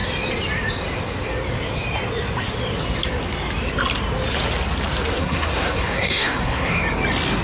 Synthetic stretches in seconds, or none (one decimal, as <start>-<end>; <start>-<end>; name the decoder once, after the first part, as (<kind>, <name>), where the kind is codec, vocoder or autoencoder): 5.1-6.8 (codec, SNAC)